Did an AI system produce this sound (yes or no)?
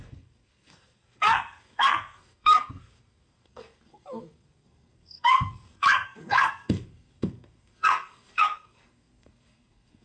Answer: yes